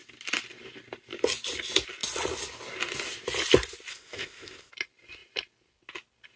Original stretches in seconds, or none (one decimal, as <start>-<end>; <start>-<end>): 0.0-3.9; 4.7-6.4